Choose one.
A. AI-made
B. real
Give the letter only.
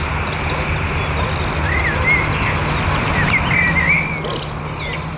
B